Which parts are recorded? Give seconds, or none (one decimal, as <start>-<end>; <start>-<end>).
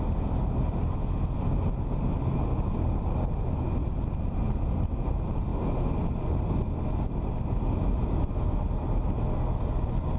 0.0-10.2